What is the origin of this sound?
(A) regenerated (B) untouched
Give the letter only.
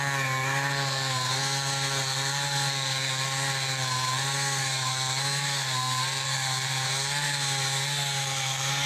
A